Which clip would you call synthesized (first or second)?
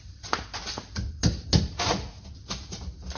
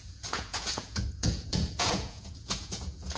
second